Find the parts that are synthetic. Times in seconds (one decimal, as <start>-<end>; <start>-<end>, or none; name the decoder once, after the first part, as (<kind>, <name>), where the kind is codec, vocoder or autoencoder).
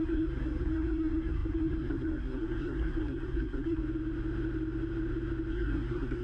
0.0-3.8 (codec, SNAC); 5.5-6.2